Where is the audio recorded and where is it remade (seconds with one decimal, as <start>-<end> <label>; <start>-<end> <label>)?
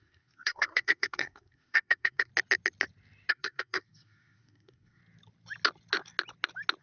0.0-2.3 remade; 2.3-3.3 recorded; 3.3-5.0 remade; 5.0-6.8 recorded